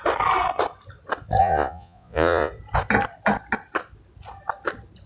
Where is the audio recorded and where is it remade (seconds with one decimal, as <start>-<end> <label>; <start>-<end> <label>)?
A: 0.0-1.4 recorded; 1.4-2.5 remade; 2.5-5.1 recorded